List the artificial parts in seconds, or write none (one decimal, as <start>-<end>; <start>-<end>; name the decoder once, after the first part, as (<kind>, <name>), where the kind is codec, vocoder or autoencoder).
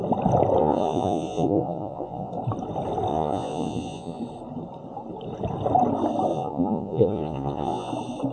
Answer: 0.6-2.3 (vocoder, Vocos); 3.1-4.2; 6.3-7.9